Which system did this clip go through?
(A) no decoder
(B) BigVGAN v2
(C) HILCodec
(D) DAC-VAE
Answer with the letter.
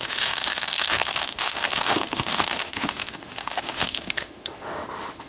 D